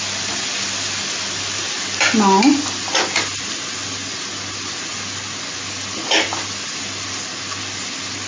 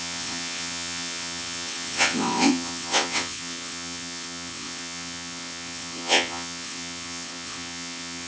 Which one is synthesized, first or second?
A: second